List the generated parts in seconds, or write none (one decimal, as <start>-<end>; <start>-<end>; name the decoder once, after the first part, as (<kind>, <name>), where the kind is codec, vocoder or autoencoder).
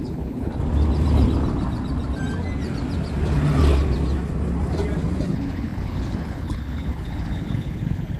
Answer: 0.0-0.5 (codec, HILCodec); 5.3-8.2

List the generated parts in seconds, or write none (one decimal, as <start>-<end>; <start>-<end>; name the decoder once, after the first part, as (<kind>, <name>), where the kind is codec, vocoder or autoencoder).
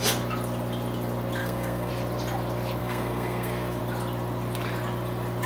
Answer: 1.4-1.9 (codec, SNAC); 2.8-3.8